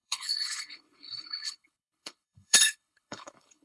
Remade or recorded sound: remade